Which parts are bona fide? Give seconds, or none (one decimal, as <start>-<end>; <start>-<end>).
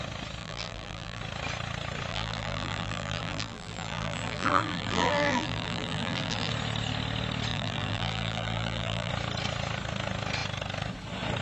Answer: 0.0-0.4; 1.2-2.1; 6.5-7.5; 9.1-11.4